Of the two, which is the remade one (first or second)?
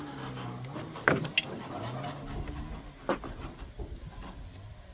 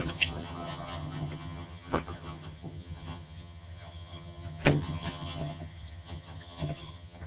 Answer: second